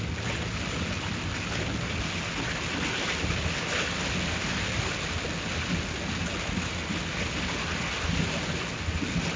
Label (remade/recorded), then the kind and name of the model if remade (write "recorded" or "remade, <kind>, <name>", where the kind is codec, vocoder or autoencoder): recorded